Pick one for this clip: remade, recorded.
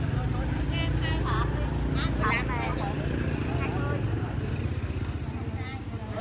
recorded